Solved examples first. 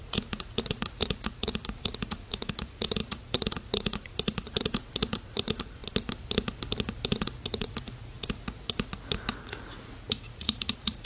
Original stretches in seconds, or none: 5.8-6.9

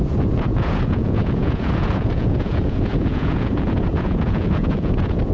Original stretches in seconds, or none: none

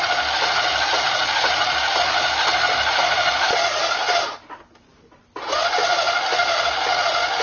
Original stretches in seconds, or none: 0.0-7.4

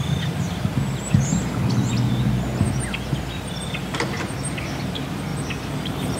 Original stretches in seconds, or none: 0.0-6.2

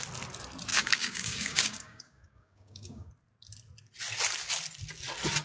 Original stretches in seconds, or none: 0.0-0.7; 3.1-5.4

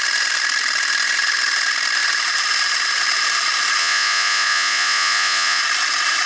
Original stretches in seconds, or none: 0.0-3.8; 5.6-6.3

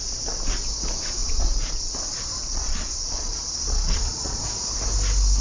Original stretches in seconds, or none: 0.0-1.2; 1.8-2.4; 4.4-5.4

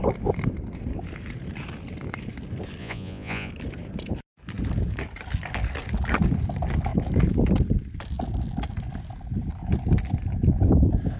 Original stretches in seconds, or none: 0.0-2.8; 3.5-11.2